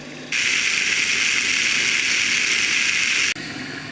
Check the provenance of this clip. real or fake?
real